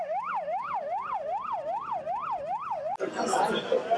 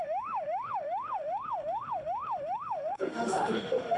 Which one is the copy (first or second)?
second